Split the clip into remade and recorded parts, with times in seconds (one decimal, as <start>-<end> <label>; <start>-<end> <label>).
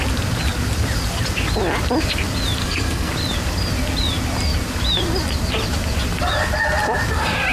0.0-2.6 recorded; 2.6-3.1 remade; 3.1-7.5 recorded